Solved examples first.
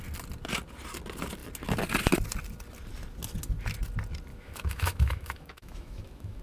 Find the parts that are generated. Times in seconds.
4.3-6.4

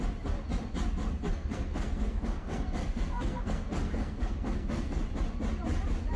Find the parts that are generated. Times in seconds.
1.3-5.0

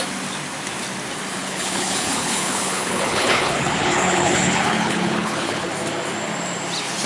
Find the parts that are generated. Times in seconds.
1.4-5.7

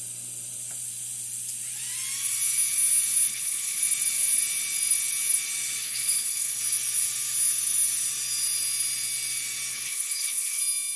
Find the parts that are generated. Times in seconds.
3.3-3.8; 5.8-6.6; 9.7-10.6

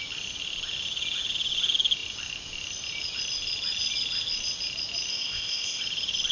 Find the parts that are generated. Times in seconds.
5.1-5.8

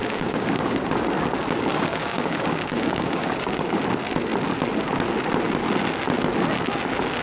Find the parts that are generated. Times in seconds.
0.0-0.8; 1.9-3.8

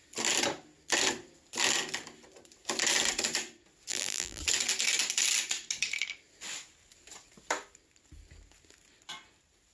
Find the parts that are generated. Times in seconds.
3.9-4.4

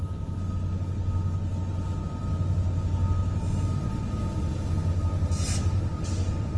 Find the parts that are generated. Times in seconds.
none